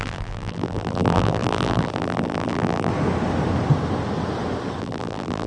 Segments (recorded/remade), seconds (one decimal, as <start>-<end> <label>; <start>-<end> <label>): 0.0-2.9 remade; 2.9-4.8 recorded; 4.8-5.5 remade